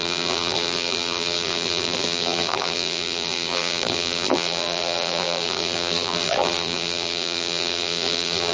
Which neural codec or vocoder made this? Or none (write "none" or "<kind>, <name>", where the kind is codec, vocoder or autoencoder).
vocoder, BigVGAN v2